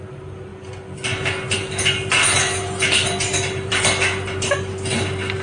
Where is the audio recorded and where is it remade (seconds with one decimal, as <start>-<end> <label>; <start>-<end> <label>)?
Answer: 0.0-5.4 recorded